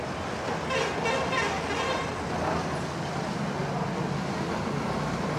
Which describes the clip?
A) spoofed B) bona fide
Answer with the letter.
B